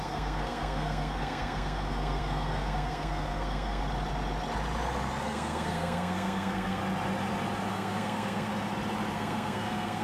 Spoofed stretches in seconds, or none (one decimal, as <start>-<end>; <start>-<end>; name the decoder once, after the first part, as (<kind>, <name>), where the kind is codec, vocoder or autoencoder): 0.0-3.8 (codec, SNAC); 5.2-6.8; 7.7-8.5; 9.1-10.0